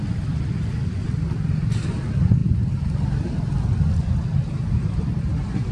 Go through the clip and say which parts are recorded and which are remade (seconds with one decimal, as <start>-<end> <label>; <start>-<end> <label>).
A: 0.0-5.7 recorded